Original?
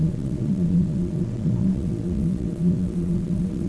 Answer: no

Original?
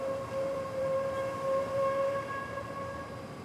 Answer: no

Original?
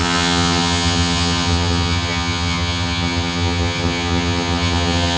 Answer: no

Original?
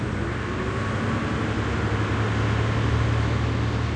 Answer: yes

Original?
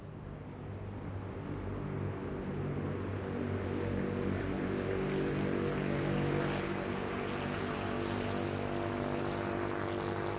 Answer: yes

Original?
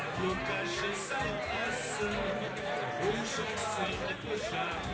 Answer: yes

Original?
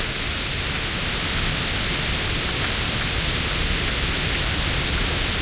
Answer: yes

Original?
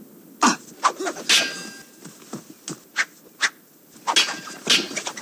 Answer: yes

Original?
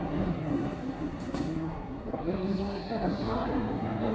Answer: no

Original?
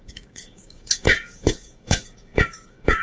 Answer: no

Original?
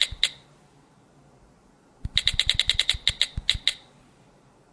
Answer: yes